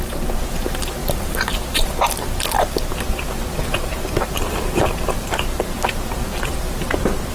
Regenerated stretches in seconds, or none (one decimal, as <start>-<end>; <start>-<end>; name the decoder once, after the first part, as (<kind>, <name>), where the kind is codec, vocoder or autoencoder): 2.9-6.3 (vocoder, BigVGAN v2)